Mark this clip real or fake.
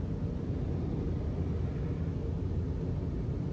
real